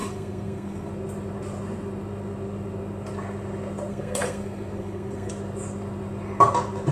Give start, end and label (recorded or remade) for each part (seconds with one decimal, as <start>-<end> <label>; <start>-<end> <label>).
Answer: 0.0-0.9 remade; 0.9-3.9 recorded; 3.9-5.3 remade; 5.3-6.9 recorded